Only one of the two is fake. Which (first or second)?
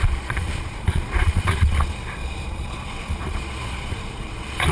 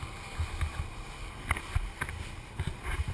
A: first